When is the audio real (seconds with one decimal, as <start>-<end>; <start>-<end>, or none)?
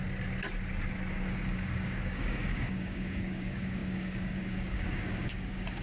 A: 0.0-1.1